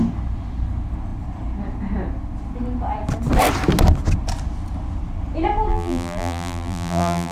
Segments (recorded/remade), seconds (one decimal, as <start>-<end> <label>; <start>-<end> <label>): 0.0-5.7 recorded; 5.7-7.3 remade

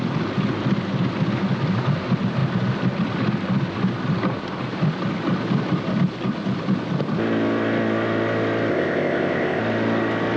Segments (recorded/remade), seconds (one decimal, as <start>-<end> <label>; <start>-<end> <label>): 0.0-8.7 recorded; 8.7-9.6 remade; 9.6-10.4 recorded

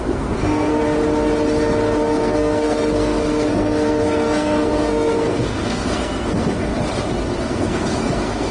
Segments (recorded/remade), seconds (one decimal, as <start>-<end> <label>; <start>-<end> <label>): 0.0-0.8 remade; 0.8-2.0 recorded; 2.0-6.7 remade; 6.7-7.4 recorded; 7.4-8.5 remade

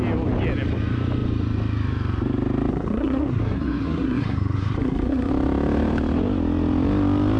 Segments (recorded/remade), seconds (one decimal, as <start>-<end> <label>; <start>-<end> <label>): 0.0-2.7 recorded; 2.7-5.3 remade; 5.3-7.4 recorded

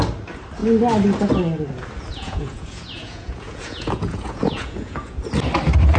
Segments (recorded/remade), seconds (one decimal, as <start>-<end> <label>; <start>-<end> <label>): 0.0-2.1 recorded; 2.1-5.2 remade; 5.2-6.0 recorded